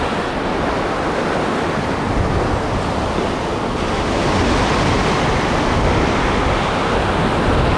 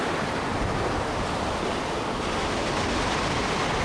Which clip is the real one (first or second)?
first